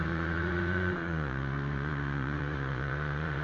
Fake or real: fake